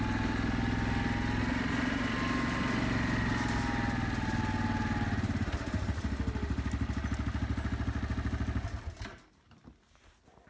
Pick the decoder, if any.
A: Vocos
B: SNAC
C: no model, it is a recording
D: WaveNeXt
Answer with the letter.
C